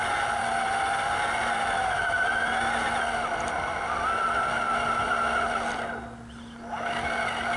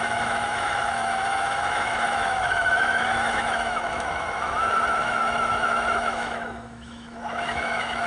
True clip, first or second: first